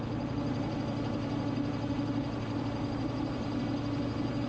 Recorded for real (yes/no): yes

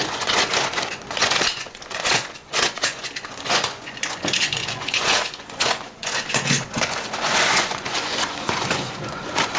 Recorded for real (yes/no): no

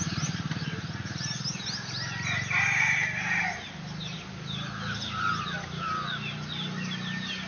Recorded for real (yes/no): yes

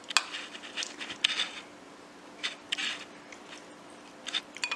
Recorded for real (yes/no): yes